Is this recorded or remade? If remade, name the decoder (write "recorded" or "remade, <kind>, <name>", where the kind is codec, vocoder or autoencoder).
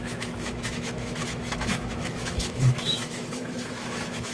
remade, autoencoder, DAC-VAE